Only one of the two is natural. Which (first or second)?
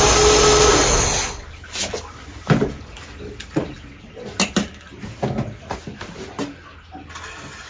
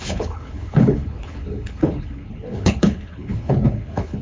first